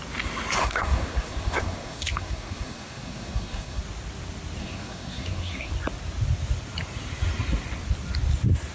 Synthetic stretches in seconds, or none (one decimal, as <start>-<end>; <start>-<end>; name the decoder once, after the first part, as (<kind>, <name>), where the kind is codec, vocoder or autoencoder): 0.6-3.8 (codec, SNAC); 4.6-5.7